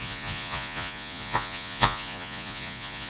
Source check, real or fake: fake